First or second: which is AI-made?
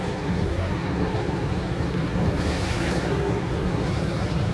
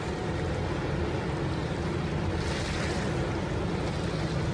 first